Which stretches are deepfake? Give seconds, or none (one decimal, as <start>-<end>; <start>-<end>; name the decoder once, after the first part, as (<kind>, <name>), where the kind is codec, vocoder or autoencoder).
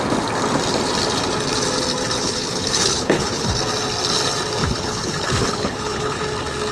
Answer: 2.2-3.6 (codec, HILCodec); 4.6-6.2